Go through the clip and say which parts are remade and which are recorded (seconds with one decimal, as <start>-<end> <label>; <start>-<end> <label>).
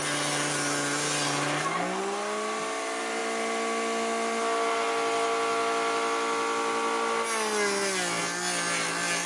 0.0-9.3 recorded